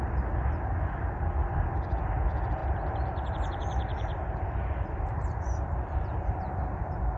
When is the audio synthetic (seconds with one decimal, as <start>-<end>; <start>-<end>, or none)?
2.6-7.2